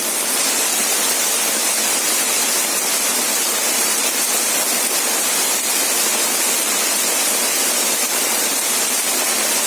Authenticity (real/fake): fake